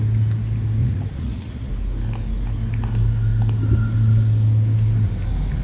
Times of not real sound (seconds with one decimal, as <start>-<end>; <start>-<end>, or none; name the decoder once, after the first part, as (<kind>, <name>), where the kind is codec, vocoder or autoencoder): 0.8-1.7 (vocoder, Vocos)